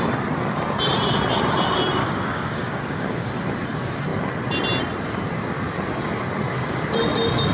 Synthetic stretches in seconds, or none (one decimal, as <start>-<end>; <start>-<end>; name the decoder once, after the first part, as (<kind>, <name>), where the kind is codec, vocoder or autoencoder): 2.0-3.3 (codec, DAC)